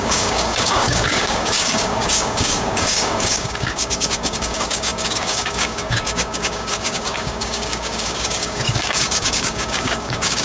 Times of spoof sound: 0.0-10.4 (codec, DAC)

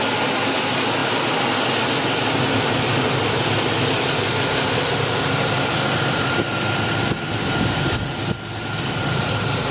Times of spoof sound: none

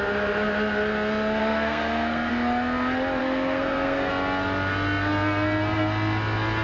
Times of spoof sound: 1.4-2.3 (codec, SNAC); 3.2-4.1

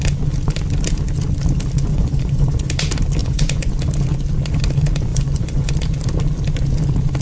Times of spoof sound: 1.9-2.7 (vocoder, Vocos); 3.2-3.7; 5.1-5.7